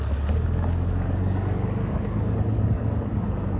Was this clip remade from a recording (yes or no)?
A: yes